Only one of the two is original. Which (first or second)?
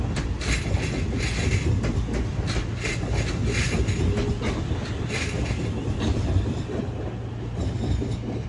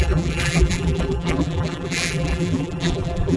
first